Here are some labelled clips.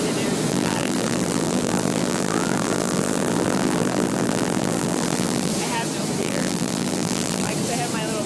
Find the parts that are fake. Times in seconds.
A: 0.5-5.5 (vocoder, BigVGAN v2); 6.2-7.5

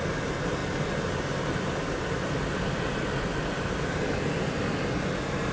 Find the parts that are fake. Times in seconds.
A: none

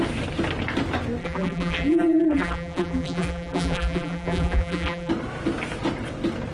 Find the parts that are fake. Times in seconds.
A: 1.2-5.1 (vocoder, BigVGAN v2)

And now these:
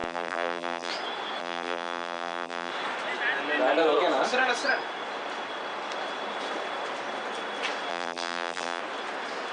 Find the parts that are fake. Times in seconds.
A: 0.0-0.9 (vocoder, BigVGAN v2); 1.4-2.7; 7.9-8.8

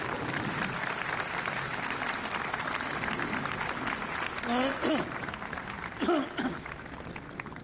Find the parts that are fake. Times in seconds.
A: 4.7-5.8 (vocoder, BigVGAN v2)

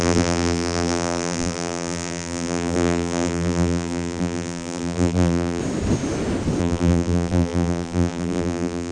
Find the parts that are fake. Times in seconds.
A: 0.0-5.6 (vocoder, BigVGAN v2); 6.6-8.9

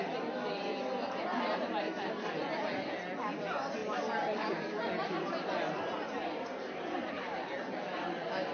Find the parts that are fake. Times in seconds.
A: none

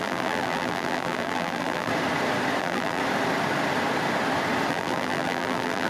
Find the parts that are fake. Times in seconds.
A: 0.0-1.9 (vocoder, BigVGAN v2); 2.6-3.0; 4.7-5.9